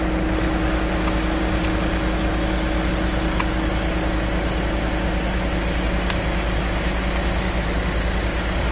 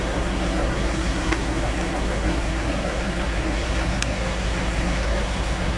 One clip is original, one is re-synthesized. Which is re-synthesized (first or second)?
second